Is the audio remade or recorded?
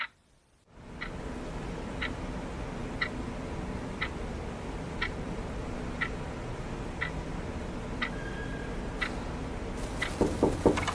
recorded